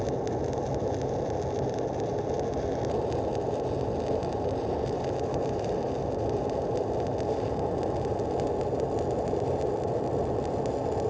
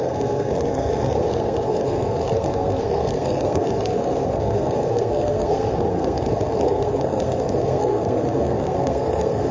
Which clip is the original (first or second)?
first